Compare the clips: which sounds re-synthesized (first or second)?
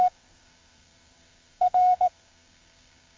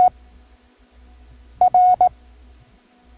first